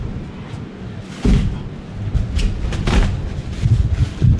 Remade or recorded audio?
recorded